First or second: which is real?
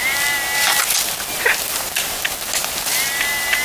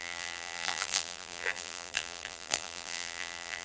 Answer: first